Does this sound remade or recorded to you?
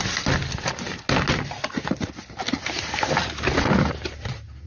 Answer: recorded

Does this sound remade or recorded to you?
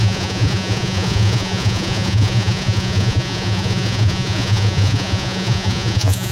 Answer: remade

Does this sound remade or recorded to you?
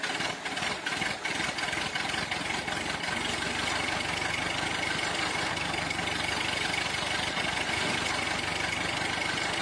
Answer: recorded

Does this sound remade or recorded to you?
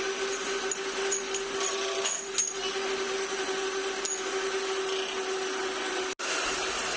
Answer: recorded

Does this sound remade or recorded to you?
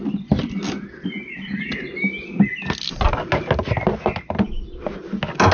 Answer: recorded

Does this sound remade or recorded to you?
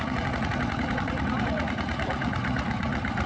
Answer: remade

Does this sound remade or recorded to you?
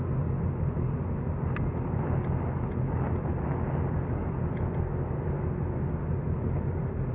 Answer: recorded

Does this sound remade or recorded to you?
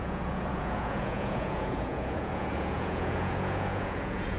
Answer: remade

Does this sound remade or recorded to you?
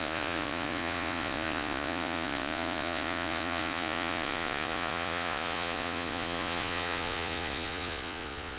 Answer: remade